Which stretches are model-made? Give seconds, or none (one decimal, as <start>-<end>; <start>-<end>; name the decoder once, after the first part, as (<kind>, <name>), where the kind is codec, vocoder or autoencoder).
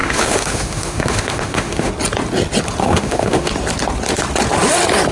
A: 0.0-1.9 (autoencoder, DAC-VAE); 2.8-3.5